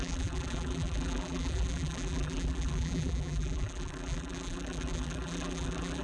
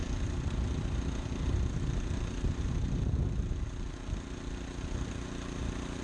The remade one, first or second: first